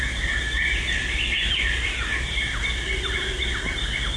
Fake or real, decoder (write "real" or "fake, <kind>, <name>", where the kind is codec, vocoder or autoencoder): real